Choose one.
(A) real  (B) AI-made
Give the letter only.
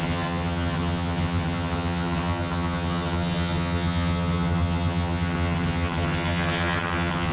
B